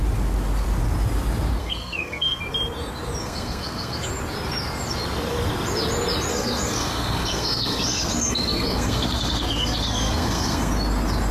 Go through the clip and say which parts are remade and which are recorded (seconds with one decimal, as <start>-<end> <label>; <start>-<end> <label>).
0.0-1.6 recorded; 1.6-2.4 remade; 2.4-3.2 recorded; 3.2-4.1 remade; 4.1-6.3 recorded; 6.3-10.7 remade; 10.7-11.3 recorded